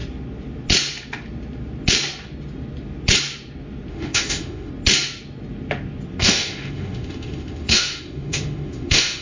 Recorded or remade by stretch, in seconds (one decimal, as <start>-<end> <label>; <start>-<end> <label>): 0.0-3.9 recorded; 3.9-4.7 remade; 4.7-6.2 recorded; 6.2-9.2 remade